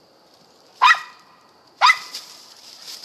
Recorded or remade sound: recorded